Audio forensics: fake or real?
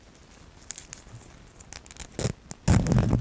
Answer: real